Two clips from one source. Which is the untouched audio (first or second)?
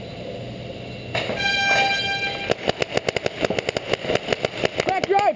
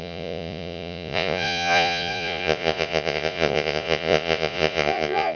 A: first